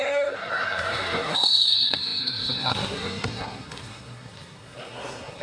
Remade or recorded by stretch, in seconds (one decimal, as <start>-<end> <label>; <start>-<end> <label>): 0.0-5.4 remade